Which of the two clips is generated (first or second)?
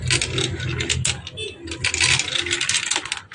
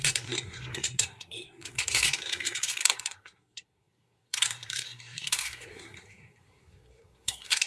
second